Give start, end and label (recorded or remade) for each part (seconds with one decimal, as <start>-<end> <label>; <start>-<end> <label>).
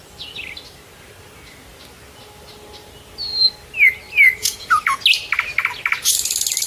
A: 0.0-4.4 recorded; 4.4-5.0 remade; 5.0-6.7 recorded